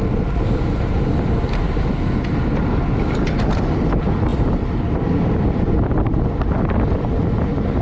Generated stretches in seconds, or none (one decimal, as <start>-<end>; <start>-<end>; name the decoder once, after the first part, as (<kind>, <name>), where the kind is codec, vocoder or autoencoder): none